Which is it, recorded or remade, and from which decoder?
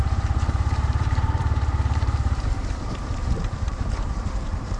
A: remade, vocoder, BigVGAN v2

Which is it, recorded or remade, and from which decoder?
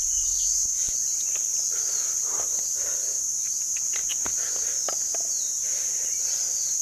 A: recorded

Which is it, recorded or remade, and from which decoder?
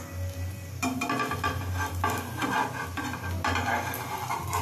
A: recorded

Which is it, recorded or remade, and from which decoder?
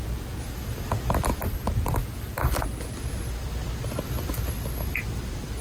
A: recorded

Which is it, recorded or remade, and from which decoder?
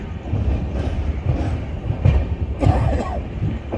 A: remade, vocoder, BigVGAN v2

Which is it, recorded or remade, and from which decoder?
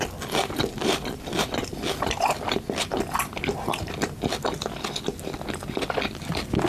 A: recorded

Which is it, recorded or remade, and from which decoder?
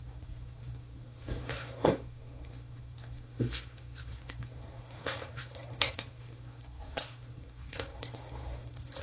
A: remade, codec, SNAC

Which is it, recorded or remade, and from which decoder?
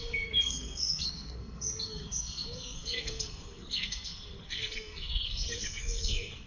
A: remade, codec, SNAC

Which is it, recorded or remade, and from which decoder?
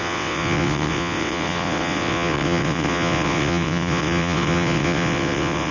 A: remade, vocoder, WaveNeXt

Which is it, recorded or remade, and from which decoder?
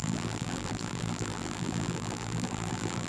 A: remade, vocoder, BigVGAN v2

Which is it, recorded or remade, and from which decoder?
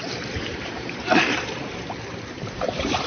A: remade, vocoder, BigVGAN v2